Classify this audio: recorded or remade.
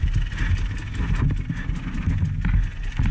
recorded